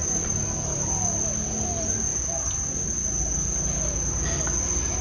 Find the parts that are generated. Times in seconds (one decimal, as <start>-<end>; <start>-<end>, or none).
none